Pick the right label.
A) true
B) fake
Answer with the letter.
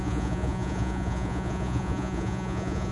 B